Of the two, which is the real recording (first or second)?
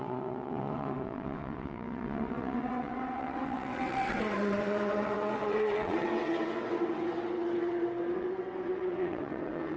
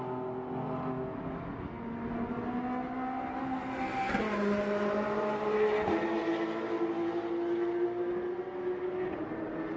second